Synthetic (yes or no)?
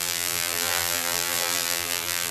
yes